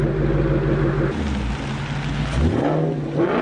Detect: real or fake real